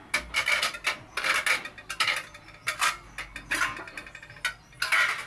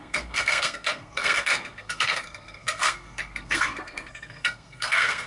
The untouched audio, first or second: first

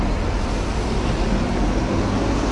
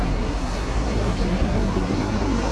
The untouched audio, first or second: first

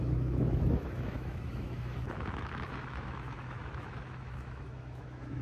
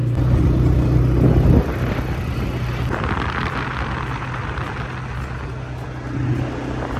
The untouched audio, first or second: second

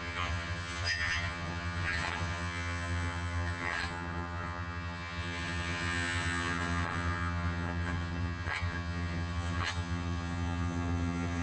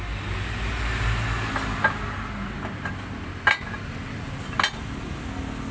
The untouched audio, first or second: second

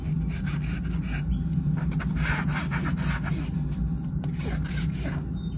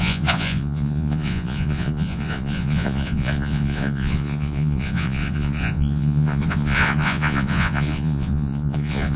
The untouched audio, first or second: first